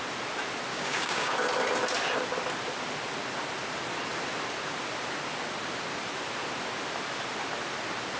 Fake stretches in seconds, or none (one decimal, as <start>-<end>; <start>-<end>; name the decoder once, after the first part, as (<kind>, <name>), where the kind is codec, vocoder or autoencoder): 0.7-1.3 (codec, DAC)